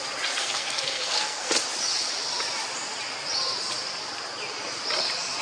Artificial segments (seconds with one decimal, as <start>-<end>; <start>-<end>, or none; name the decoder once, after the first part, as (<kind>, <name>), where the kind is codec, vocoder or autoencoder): 0.4-1.5 (codec, SNAC)

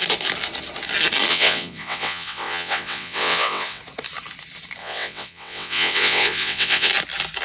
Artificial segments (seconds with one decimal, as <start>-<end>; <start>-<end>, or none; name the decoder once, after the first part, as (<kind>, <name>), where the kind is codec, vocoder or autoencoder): 1.3-3.8 (vocoder, WaveNeXt); 4.8-6.9

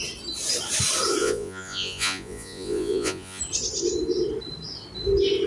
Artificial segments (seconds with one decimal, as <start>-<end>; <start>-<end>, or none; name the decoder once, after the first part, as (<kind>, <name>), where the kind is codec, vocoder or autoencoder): 1.2-3.4 (vocoder, Vocos)

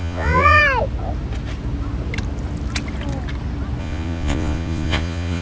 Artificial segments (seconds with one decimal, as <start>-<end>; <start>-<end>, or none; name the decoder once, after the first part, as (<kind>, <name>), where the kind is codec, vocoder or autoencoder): 0.0-0.6 (vocoder, Vocos); 3.8-5.4

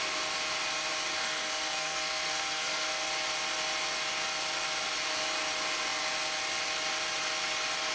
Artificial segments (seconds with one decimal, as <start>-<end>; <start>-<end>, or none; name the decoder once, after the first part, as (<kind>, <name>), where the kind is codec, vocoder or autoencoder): 1.2-3.1 (codec, SNAC)

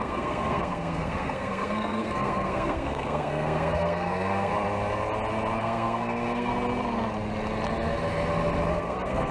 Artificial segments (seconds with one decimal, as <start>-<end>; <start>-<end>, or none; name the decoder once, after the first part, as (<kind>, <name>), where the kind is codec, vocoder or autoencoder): 0.0-4.5 (codec, SNAC); 5.6-6.5; 8.7-9.3

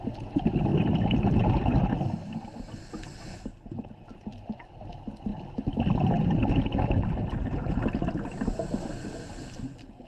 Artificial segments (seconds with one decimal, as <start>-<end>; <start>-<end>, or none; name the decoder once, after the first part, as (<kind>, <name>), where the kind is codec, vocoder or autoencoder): 0.7-2.0 (vocoder, BigVGAN v2)